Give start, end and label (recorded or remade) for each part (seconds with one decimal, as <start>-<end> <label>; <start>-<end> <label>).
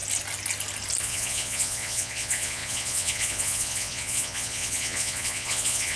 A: 0.0-1.0 recorded; 1.0-6.0 remade